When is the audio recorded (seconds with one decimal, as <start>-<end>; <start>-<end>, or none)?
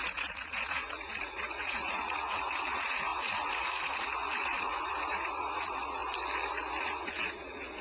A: 6.0-6.8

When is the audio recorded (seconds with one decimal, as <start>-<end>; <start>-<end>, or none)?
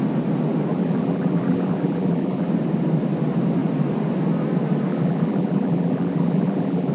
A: 0.0-0.7; 2.5-4.9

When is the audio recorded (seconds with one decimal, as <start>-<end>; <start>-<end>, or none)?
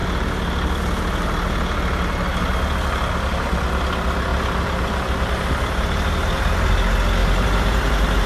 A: 0.0-4.3; 6.7-7.2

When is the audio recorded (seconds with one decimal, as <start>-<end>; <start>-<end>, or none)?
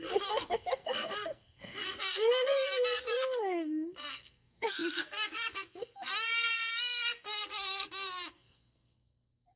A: none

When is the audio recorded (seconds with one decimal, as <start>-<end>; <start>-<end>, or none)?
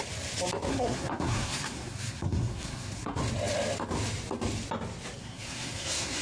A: 0.0-0.7; 3.2-5.2